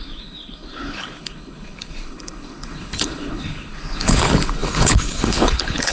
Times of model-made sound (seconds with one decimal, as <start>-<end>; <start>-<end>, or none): 0.0-5.9